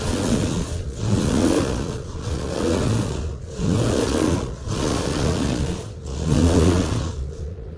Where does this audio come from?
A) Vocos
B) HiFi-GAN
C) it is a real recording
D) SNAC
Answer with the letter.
A